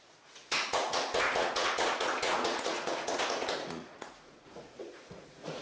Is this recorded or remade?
remade